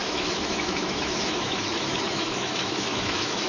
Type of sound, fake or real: fake